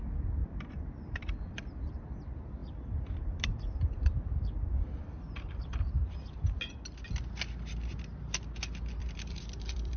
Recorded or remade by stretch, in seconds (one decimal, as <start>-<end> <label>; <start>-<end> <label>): 0.0-0.4 recorded; 0.4-1.9 remade; 1.9-2.6 recorded; 2.6-6.6 remade; 6.6-9.0 recorded; 9.0-10.0 remade